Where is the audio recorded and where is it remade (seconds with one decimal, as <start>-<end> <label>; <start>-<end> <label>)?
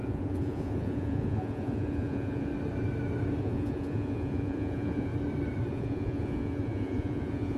0.0-2.5 remade; 2.5-3.4 recorded; 3.4-5.1 remade; 5.1-5.7 recorded; 5.7-7.6 remade